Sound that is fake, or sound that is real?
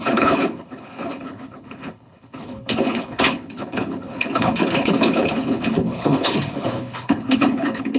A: fake